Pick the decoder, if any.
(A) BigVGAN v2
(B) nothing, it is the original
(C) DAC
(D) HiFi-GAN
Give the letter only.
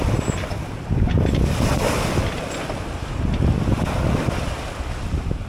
B